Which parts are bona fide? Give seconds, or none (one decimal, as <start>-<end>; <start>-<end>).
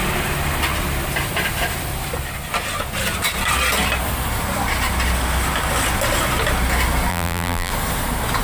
0.0-7.1; 7.7-8.4